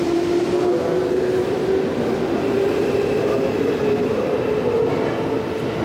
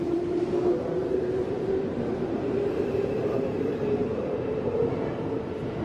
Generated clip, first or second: second